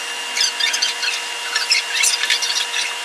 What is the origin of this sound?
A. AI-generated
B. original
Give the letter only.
B